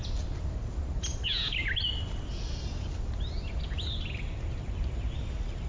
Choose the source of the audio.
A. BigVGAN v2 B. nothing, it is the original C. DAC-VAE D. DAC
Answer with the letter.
B